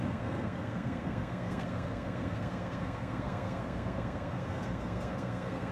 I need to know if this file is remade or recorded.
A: remade